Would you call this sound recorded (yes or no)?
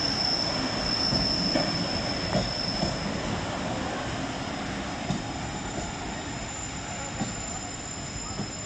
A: yes